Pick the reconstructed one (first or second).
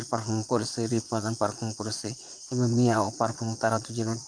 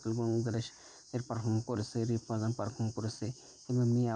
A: first